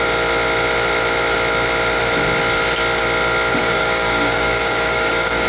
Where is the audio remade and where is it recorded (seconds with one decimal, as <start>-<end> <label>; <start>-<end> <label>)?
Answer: 0.0-3.6 recorded; 3.6-5.5 remade